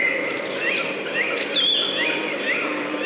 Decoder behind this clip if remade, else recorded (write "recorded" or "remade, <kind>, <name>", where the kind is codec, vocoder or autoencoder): remade, vocoder, BigVGAN v2